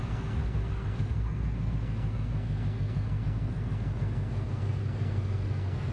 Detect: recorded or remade remade